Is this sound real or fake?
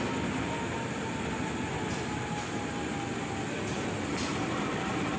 real